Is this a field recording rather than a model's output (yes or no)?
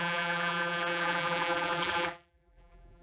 no